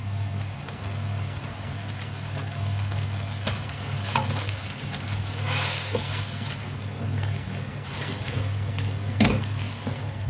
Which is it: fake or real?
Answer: fake